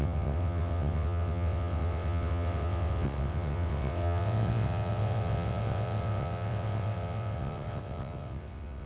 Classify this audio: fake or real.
fake